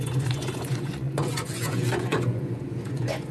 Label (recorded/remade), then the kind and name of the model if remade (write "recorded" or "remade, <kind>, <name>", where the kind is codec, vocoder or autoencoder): remade, vocoder, Vocos